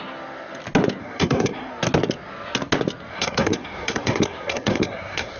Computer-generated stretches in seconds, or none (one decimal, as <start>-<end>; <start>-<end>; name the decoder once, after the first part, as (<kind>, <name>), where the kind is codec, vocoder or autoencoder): 1.0-1.7 (codec, SNAC); 3.1-5.4